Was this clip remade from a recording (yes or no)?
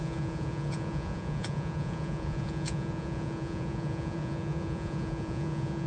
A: yes